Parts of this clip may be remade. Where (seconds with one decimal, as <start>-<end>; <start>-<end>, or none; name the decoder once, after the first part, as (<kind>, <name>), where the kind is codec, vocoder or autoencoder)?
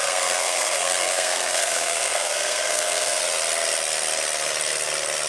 0.0-3.2 (codec, SNAC)